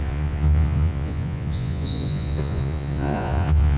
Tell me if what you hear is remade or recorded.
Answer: remade